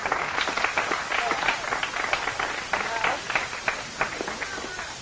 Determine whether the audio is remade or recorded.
recorded